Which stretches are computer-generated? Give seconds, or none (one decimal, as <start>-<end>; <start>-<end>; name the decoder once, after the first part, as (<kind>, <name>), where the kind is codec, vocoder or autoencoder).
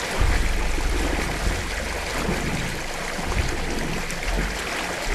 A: none